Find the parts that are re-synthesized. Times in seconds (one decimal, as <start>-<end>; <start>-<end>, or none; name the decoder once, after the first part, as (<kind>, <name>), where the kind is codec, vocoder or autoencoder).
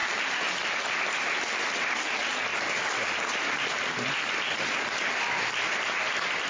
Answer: none